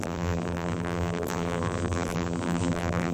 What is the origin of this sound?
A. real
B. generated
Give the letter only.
B